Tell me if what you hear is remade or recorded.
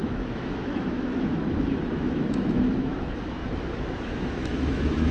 remade